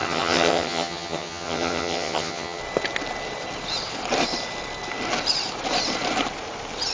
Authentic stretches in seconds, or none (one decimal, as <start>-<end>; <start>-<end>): 2.6-6.9